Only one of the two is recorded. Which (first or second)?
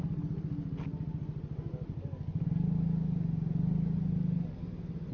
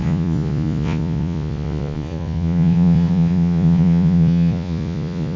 first